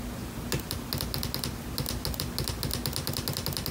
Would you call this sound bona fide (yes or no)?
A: yes